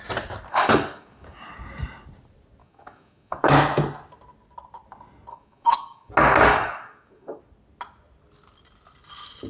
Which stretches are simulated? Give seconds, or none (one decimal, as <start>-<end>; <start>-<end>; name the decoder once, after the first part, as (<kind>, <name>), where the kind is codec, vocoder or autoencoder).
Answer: 0.5-1.5 (codec, DAC); 2.6-3.5; 5.3-6.1; 6.5-7.4